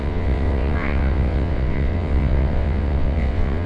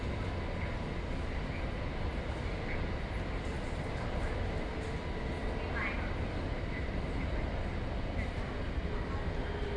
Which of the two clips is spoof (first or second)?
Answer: first